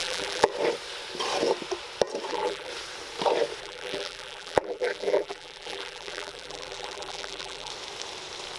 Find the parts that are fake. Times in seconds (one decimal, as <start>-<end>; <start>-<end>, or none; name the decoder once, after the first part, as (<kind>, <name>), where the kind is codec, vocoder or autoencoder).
0.0-0.5 (vocoder, BigVGAN v2); 2.3-2.7; 3.6-7.7